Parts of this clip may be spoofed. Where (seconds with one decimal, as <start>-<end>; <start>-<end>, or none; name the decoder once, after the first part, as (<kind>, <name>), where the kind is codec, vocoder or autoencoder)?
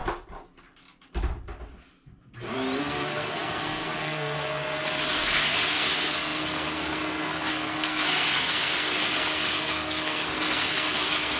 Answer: 2.8-11.4 (codec, SNAC)